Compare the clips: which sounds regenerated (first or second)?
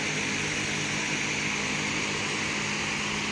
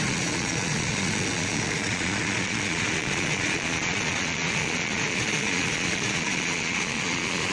second